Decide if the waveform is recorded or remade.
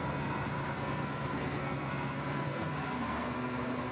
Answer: remade